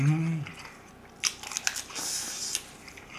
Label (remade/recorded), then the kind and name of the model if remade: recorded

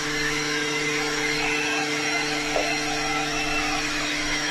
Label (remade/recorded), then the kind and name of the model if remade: remade, autoencoder, DAC-VAE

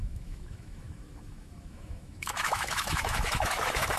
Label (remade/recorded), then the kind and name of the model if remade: remade, autoencoder, DAC-VAE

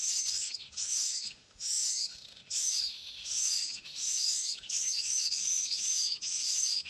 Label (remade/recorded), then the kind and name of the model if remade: remade, autoencoder, DAC-VAE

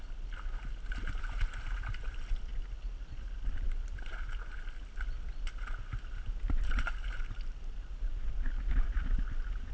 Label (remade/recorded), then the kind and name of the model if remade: recorded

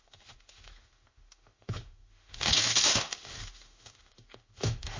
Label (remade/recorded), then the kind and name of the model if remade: remade, autoencoder, DAC-VAE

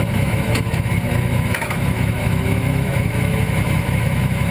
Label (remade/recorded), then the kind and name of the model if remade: remade, autoencoder, DAC-VAE